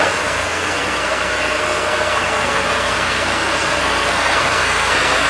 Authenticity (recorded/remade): remade